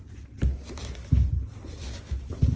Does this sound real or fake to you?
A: real